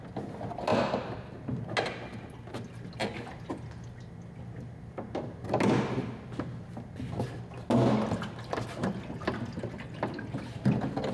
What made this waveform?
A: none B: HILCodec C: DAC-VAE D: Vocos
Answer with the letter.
A